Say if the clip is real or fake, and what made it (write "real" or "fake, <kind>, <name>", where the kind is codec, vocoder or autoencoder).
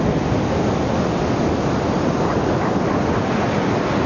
real